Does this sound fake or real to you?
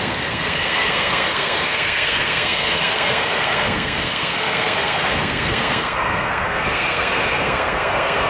fake